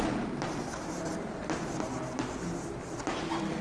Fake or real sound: real